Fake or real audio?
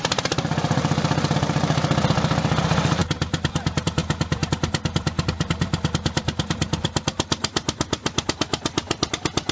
fake